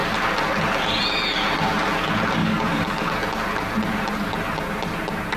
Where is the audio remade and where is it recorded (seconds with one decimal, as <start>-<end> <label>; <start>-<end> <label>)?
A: 0.0-2.4 recorded; 2.4-3.1 remade; 3.1-5.4 recorded